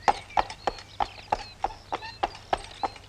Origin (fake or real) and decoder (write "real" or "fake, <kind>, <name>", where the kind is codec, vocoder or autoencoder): real